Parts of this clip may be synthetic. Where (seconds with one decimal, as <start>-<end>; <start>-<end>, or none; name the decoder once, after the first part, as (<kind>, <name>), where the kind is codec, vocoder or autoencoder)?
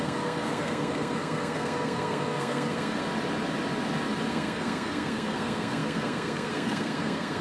0.0-3.0 (codec, SNAC); 4.3-7.4